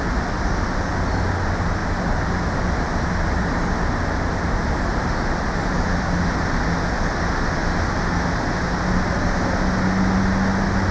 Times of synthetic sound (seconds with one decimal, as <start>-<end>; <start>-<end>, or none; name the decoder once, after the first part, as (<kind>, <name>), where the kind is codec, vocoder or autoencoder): none